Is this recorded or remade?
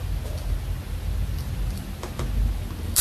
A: recorded